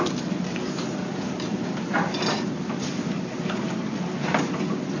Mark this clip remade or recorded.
recorded